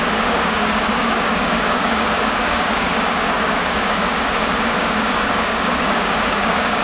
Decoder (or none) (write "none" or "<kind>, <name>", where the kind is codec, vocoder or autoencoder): codec, DAC